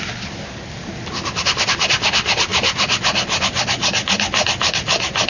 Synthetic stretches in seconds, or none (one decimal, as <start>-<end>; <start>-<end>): none